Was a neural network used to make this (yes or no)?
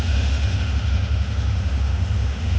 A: yes